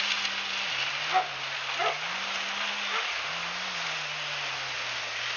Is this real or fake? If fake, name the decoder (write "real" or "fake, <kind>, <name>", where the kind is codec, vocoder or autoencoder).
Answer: real